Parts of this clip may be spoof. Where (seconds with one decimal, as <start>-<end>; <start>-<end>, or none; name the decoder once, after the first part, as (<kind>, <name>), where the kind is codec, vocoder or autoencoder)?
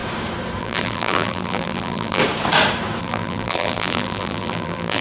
0.6-2.2 (vocoder, BigVGAN v2); 3.0-5.0